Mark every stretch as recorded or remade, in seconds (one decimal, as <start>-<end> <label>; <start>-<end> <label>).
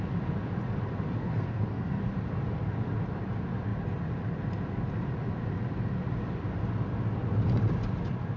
0.0-1.2 recorded; 1.2-2.0 remade; 2.0-8.4 recorded